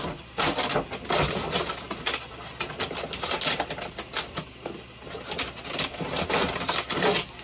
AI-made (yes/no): no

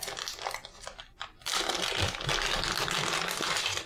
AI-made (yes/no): no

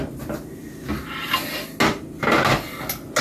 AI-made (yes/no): no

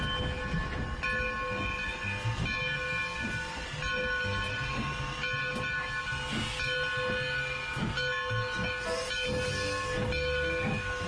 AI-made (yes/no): no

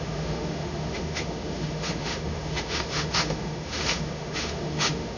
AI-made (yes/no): yes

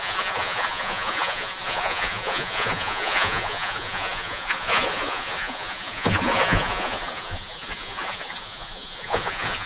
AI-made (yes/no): yes